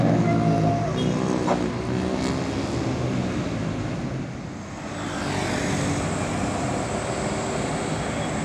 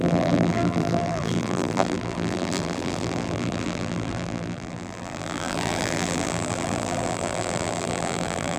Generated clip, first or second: second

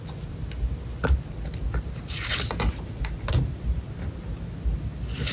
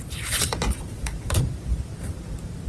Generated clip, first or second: second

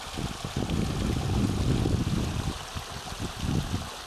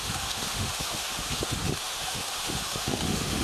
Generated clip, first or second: second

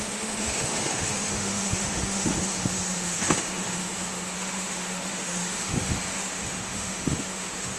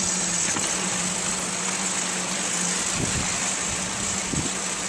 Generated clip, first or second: first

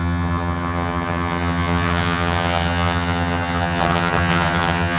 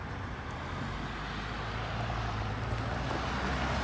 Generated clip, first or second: first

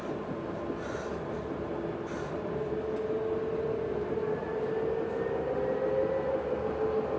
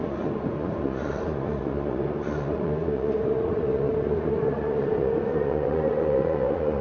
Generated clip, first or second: second